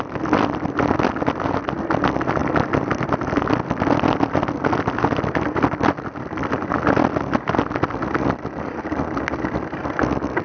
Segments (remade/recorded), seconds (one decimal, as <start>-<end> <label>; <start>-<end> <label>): 0.0-2.4 recorded; 2.4-3.5 remade; 3.5-10.4 recorded